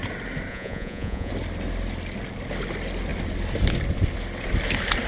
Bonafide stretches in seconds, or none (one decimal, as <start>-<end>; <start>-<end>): 0.0-0.5; 1.3-5.1